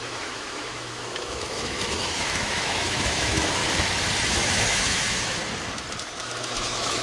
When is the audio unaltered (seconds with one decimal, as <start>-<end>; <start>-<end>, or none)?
3.6-4.3; 5.4-6.2